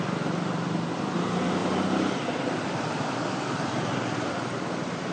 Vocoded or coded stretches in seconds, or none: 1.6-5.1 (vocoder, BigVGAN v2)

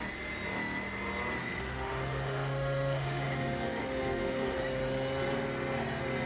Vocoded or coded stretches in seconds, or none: 1.4-4.6 (autoencoder, DAC-VAE)

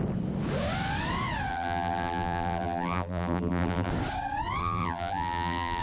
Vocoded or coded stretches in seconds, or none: 1.5-3.9 (vocoder, BigVGAN v2); 4.6-5.8

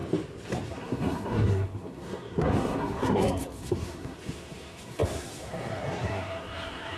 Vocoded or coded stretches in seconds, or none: 0.7-7.0 (codec, SNAC)

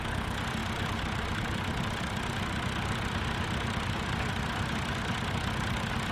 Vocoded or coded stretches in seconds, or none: none

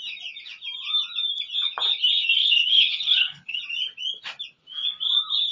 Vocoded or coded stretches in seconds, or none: 2.4-3.6 (codec, HILCodec)

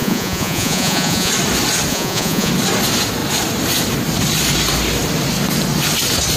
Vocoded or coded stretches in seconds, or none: 0.0-1.3 (vocoder, Vocos); 1.9-2.5